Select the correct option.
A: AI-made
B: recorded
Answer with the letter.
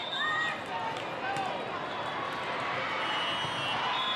B